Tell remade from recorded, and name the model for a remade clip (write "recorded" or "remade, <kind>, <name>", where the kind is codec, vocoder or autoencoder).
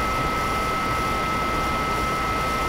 recorded